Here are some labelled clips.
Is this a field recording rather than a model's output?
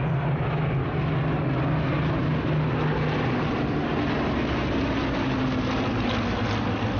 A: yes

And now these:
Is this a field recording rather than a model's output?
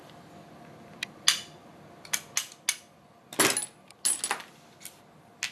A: yes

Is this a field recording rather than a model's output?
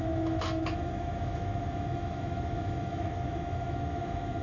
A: no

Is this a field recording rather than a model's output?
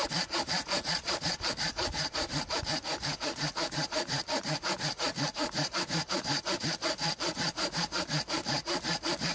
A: no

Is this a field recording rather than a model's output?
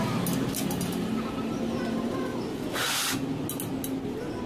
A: yes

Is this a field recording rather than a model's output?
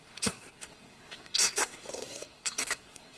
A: no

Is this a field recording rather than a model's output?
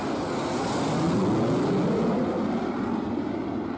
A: yes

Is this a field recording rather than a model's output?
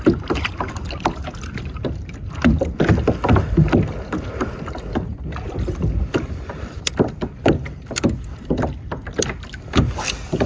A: yes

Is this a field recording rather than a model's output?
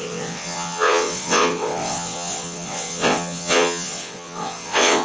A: no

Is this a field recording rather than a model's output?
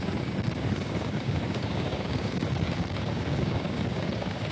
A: no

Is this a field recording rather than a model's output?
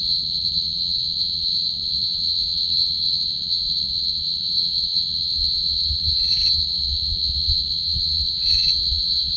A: no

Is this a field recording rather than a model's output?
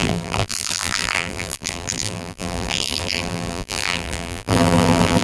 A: no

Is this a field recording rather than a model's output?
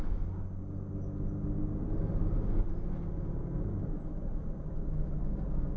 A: yes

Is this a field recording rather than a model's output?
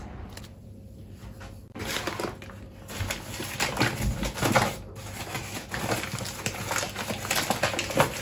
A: yes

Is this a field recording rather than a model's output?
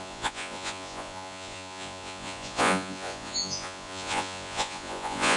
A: no